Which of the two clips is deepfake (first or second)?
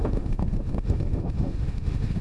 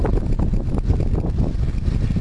first